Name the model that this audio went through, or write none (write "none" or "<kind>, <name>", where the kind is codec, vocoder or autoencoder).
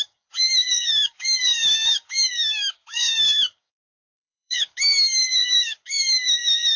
codec, DAC